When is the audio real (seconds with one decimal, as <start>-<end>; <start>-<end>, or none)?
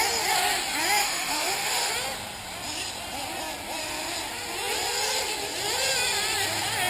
0.0-1.0; 1.9-6.9